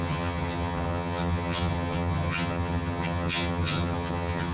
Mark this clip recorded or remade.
remade